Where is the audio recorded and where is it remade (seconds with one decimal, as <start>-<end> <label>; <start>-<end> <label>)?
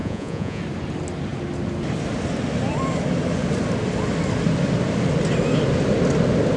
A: 0.0-0.6 remade; 0.6-6.6 recorded